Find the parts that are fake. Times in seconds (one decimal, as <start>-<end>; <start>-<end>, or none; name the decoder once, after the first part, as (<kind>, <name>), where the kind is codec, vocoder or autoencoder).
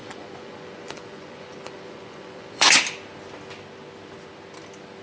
0.0-2.8 (vocoder, Vocos)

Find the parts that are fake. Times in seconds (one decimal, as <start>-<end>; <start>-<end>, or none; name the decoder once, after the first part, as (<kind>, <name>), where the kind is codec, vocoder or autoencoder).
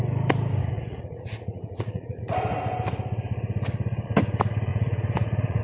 0.6-2.2 (vocoder, Vocos); 4.7-5.6